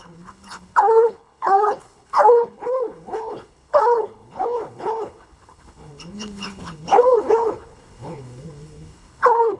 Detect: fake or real fake